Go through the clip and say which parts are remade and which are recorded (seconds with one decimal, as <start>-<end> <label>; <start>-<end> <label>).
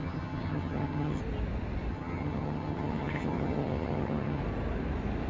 0.0-1.2 remade; 1.2-1.9 recorded; 1.9-4.4 remade; 4.4-5.3 recorded